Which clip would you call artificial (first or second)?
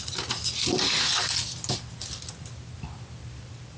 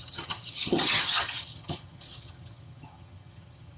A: second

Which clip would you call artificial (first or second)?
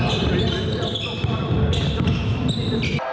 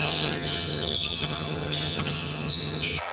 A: second